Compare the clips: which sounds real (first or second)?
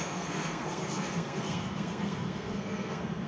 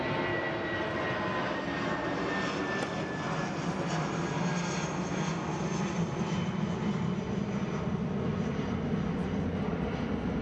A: second